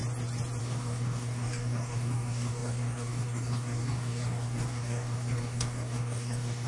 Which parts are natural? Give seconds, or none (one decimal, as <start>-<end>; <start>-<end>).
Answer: 0.0-0.6